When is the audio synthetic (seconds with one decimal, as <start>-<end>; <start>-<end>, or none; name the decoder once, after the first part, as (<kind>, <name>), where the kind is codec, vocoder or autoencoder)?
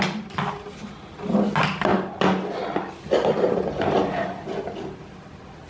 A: none